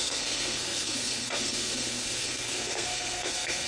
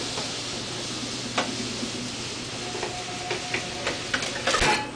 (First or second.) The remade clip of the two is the first